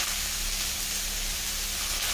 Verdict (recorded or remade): recorded